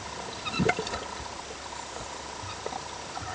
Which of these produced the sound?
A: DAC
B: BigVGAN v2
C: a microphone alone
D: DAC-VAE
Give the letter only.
B